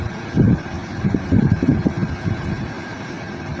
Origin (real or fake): real